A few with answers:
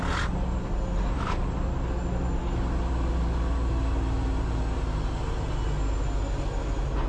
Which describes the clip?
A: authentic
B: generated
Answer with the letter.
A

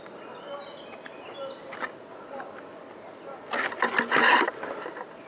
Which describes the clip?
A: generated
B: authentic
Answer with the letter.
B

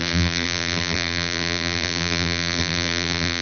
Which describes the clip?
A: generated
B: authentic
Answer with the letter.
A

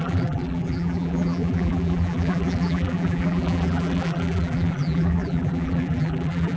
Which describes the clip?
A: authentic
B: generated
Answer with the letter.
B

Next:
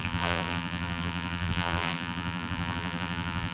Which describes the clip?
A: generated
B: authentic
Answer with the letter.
A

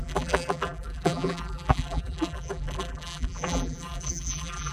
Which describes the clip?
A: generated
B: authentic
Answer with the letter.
A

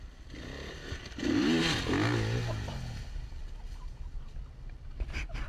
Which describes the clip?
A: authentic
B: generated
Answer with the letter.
A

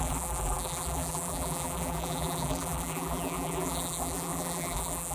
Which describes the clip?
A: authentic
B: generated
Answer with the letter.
B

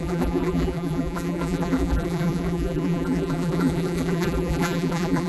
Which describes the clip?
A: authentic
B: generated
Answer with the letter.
B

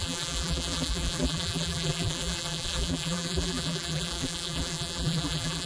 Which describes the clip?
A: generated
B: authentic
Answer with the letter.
A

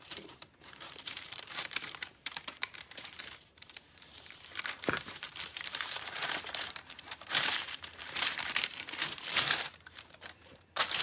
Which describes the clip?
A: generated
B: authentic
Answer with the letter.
A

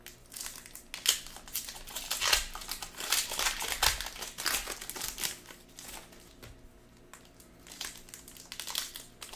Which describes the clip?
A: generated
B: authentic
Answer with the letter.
B